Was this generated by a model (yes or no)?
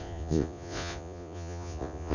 yes